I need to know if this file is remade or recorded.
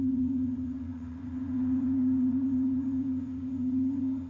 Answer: remade